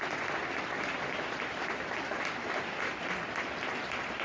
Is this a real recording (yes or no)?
yes